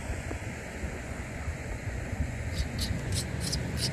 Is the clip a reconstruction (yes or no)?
yes